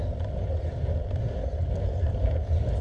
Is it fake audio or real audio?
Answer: real